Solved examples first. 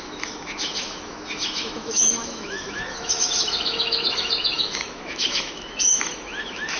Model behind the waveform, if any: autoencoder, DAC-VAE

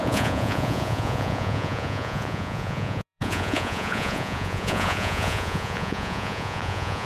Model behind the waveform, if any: vocoder, Vocos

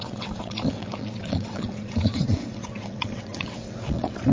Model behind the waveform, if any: vocoder, WaveNeXt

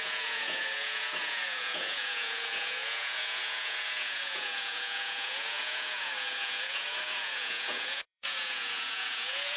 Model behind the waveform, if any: vocoder, Vocos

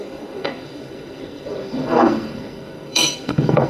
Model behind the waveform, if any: codec, SNAC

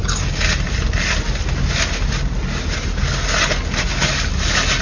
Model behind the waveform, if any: none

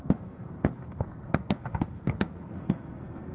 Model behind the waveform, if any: codec, SNAC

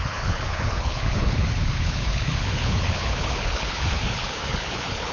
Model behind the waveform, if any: codec, HILCodec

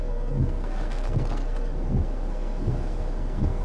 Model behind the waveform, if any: codec, SNAC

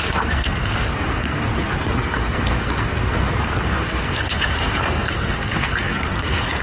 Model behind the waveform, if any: codec, SNAC